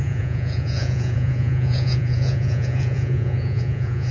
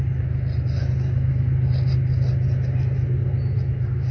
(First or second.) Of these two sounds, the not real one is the first